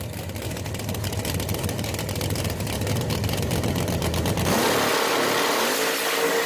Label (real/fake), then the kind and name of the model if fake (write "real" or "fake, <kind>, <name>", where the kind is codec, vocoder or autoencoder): real